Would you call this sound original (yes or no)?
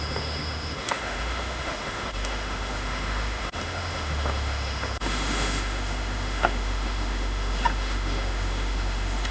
no